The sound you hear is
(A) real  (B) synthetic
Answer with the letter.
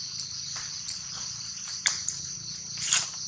B